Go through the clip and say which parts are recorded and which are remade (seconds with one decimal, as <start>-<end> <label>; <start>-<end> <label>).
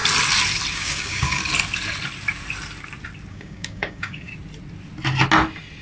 0.0-0.7 recorded; 0.7-1.4 remade; 1.4-3.3 recorded; 3.3-4.3 remade; 4.3-5.8 recorded